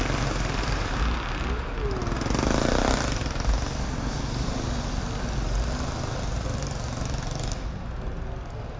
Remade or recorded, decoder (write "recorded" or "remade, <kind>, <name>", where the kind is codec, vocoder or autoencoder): recorded